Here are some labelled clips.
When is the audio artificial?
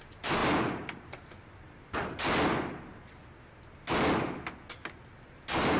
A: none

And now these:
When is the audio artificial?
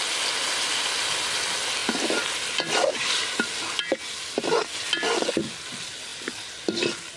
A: none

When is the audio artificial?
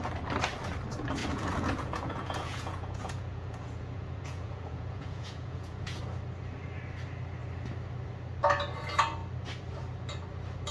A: 1.2-6.0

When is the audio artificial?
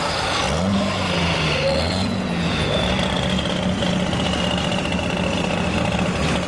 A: 1.9-2.9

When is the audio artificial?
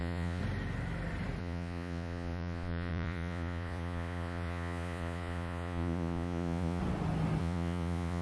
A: 0.0-0.4; 1.4-6.8; 7.4-8.2